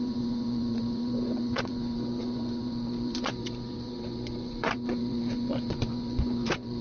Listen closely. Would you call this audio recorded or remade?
remade